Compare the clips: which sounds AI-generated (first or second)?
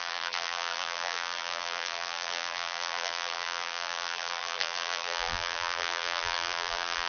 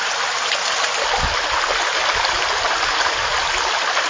first